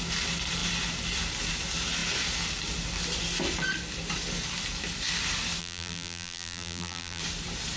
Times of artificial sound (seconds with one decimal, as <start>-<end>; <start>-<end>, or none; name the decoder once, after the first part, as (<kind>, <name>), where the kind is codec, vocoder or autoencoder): 5.6-7.2 (vocoder, BigVGAN v2)